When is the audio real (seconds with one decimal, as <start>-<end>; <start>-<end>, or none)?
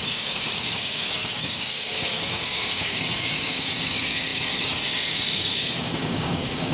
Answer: none